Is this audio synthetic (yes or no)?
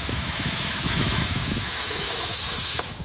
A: yes